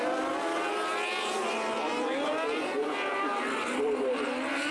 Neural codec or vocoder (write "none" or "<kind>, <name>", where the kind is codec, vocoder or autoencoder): none